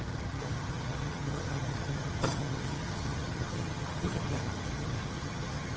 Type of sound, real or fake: fake